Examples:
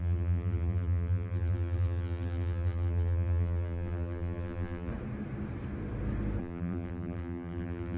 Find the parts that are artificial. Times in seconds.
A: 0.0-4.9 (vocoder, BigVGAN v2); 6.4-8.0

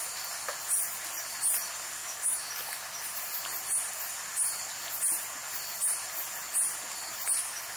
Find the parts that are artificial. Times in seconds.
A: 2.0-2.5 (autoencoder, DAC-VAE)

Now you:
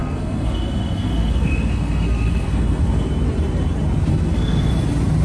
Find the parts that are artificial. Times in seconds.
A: 0.0-3.1 (codec, SNAC); 4.1-4.7